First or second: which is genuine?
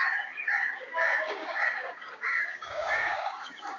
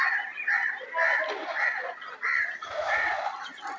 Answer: second